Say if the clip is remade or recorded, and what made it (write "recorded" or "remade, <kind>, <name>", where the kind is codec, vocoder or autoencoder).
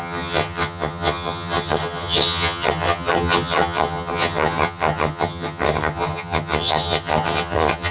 remade, vocoder, HiFi-GAN